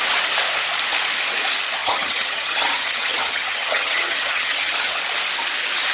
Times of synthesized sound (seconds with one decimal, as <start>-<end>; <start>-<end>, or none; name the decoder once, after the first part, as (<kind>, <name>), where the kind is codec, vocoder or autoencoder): 1.8-5.0 (vocoder, HiFi-GAN)